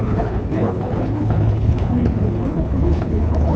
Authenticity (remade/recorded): remade